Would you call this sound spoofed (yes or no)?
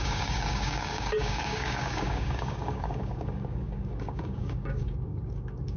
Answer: yes